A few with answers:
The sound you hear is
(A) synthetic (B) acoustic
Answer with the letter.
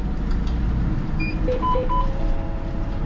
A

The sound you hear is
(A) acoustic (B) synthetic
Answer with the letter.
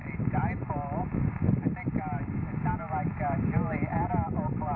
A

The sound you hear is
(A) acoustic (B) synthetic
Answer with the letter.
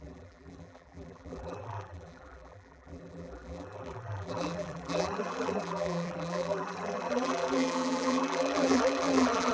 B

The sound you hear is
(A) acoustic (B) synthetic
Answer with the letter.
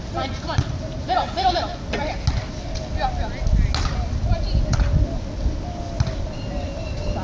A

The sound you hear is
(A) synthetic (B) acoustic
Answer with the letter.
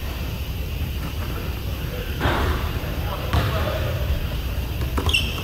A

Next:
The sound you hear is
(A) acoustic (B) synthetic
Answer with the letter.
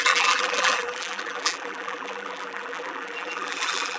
B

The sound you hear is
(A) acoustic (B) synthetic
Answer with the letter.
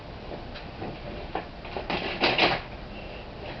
A